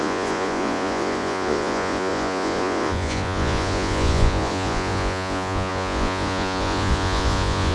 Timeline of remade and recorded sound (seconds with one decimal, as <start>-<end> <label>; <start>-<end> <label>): 0.0-7.7 remade